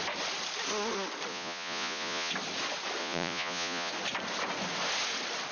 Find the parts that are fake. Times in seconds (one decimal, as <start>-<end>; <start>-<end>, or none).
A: 1.3-2.3; 3.0-3.9